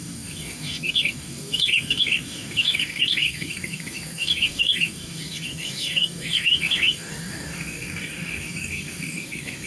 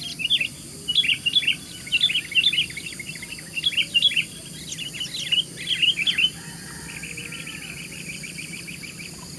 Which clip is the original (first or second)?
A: second